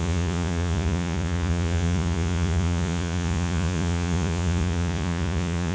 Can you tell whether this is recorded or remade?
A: remade